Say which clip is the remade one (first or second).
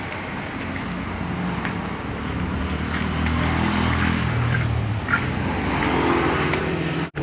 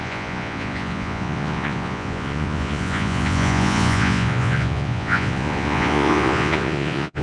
second